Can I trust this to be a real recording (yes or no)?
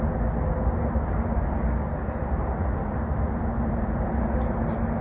yes